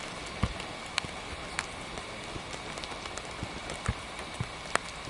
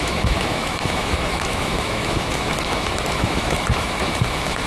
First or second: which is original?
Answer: first